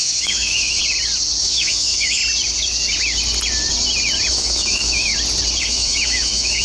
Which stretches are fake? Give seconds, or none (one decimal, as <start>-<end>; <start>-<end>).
0.0-0.8; 1.4-2.2; 4.3-5.1; 5.6-6.6